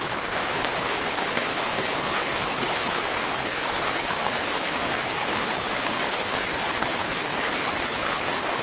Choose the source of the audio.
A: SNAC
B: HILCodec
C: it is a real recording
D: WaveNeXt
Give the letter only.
B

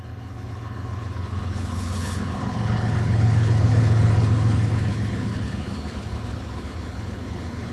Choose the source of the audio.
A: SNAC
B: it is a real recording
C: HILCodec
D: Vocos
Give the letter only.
C